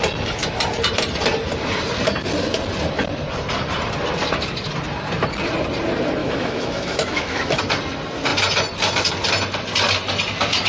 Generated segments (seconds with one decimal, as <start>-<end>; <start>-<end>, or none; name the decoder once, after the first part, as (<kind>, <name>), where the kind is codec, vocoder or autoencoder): 6.2-7.6 (autoencoder, DAC-VAE)